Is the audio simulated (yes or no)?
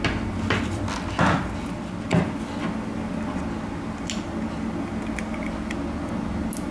no